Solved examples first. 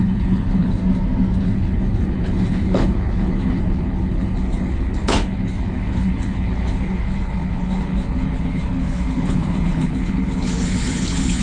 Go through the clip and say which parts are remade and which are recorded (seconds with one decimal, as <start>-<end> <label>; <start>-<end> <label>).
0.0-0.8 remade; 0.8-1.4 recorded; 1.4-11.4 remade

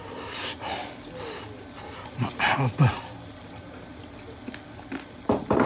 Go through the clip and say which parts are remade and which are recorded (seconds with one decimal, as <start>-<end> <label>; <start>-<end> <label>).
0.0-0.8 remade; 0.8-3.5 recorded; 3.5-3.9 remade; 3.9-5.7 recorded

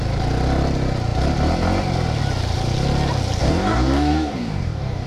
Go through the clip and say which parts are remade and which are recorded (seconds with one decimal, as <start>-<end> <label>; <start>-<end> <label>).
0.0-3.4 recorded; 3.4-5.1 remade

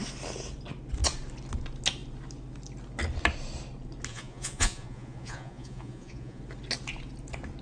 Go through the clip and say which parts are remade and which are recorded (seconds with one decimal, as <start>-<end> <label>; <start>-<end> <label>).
0.0-4.1 recorded; 4.1-6.4 remade; 6.4-7.6 recorded